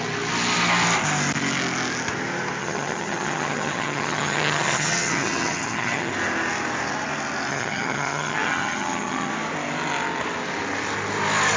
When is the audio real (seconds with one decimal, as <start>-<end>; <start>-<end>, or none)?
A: 0.0-2.6; 6.1-7.5; 9.3-11.6